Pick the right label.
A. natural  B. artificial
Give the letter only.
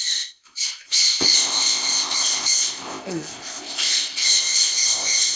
B